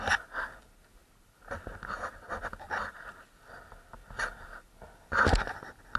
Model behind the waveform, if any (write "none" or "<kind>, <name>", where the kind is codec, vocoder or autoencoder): none